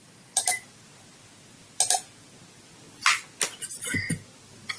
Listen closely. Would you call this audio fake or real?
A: real